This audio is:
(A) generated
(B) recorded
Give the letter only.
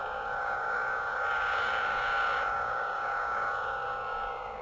A